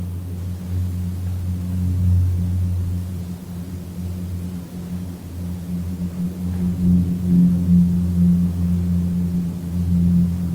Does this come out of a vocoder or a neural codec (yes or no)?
no